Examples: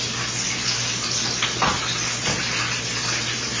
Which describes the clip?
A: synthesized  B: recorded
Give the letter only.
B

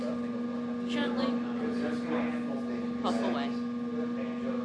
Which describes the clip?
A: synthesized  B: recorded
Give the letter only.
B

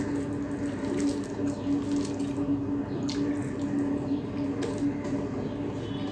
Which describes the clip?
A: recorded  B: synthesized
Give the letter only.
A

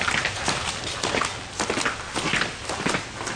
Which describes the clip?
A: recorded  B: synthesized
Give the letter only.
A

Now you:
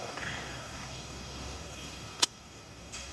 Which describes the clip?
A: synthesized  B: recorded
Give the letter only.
A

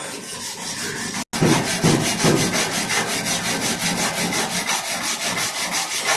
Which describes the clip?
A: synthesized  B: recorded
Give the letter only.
B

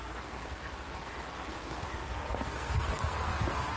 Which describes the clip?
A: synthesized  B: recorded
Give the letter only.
A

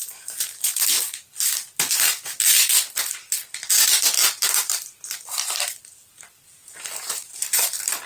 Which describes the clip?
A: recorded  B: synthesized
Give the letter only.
A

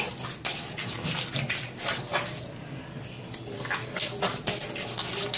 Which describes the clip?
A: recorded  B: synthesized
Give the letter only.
A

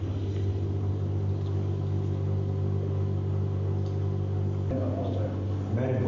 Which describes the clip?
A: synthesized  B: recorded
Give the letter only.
B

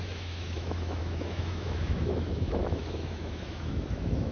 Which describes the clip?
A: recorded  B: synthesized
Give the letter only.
B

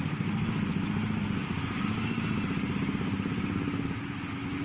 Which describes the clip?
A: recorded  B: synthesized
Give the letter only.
A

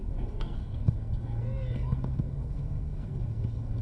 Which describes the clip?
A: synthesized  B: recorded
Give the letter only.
A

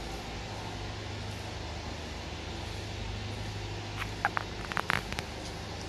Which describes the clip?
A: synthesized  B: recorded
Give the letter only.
B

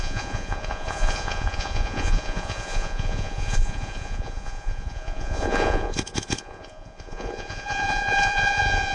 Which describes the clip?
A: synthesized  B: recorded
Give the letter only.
A